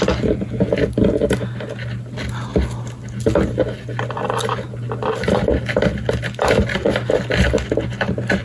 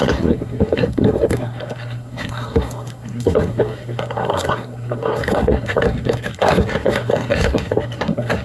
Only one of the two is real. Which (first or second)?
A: first